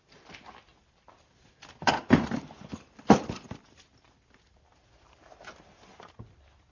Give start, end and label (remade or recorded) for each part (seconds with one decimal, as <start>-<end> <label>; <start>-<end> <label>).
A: 0.0-0.7 recorded; 0.7-4.7 remade; 4.7-6.7 recorded